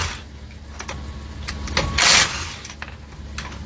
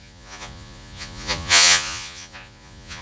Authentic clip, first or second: first